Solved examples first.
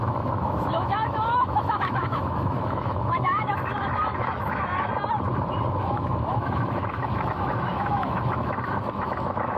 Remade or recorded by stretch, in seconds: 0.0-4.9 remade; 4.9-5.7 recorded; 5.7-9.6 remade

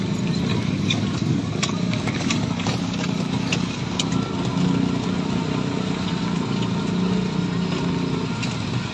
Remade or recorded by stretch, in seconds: 0.0-0.5 recorded; 0.5-4.1 remade; 4.1-8.9 recorded

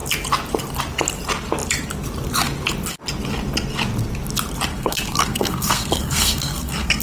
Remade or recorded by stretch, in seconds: 0.0-4.7 recorded; 4.7-7.0 remade

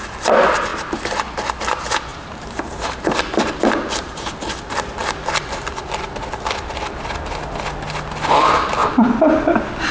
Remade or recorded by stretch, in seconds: 0.0-2.1 recorded; 2.1-4.5 remade; 4.5-9.9 recorded